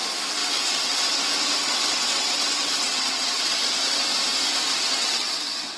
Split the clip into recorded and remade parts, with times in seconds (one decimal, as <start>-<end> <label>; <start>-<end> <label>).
0.0-4.1 remade; 4.1-4.9 recorded; 4.9-5.8 remade

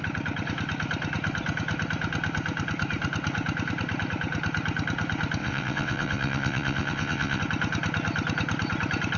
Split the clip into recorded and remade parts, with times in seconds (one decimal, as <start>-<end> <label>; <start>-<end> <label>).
0.0-5.4 recorded; 5.4-7.4 remade; 7.4-9.2 recorded

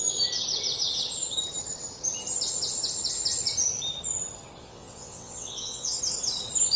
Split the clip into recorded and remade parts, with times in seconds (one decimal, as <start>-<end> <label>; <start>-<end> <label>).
0.0-4.6 recorded; 4.6-6.0 remade; 6.0-6.8 recorded

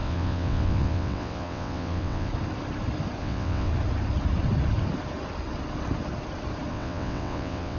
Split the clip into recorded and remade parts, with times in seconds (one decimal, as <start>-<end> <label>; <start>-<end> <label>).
0.0-2.3 remade; 2.3-3.2 recorded; 3.2-3.7 remade; 3.7-6.7 recorded; 6.7-7.8 remade

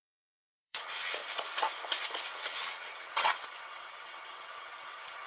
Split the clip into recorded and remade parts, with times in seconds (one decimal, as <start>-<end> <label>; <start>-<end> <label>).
0.0-1.2 remade; 1.2-2.2 recorded; 2.2-5.3 remade

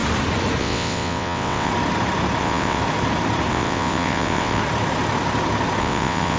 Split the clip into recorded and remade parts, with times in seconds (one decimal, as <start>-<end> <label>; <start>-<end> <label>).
0.0-0.6 recorded; 0.6-1.7 remade; 1.7-2.4 recorded; 2.4-2.8 remade; 2.8-3.5 recorded; 3.5-4.6 remade; 4.6-5.8 recorded; 5.8-6.4 remade

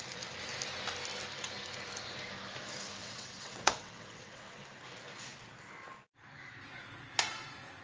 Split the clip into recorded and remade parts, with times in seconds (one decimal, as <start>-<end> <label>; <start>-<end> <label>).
0.0-3.0 recorded; 3.0-4.6 remade; 4.6-7.8 recorded

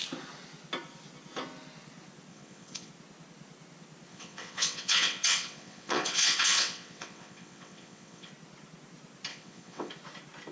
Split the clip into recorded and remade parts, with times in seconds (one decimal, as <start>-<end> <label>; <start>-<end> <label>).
0.0-2.3 recorded; 2.3-2.9 remade; 2.9-4.1 recorded; 4.1-8.3 remade; 8.3-9.3 recorded; 9.3-9.9 remade; 9.9-10.5 recorded